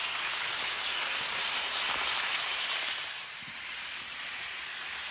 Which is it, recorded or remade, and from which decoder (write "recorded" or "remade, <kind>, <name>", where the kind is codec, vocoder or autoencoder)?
recorded